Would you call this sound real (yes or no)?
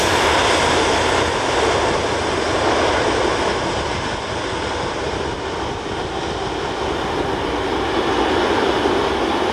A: yes